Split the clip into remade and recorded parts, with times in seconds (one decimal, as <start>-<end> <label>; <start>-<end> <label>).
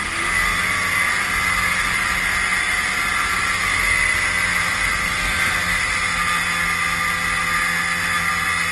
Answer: 0.0-8.7 recorded